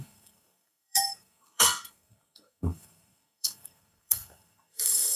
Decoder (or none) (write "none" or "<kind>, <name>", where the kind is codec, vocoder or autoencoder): codec, SNAC